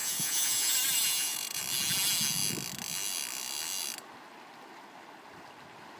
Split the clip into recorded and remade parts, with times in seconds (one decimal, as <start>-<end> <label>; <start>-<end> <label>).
0.0-1.6 remade; 1.6-6.0 recorded